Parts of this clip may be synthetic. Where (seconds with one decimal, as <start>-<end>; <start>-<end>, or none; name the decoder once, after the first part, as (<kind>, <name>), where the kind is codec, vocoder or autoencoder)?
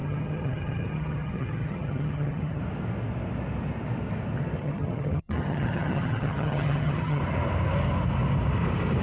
0.0-2.6 (vocoder, HiFi-GAN); 4.6-7.2